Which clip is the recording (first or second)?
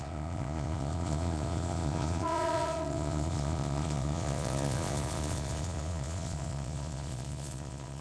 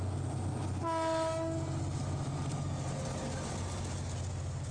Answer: second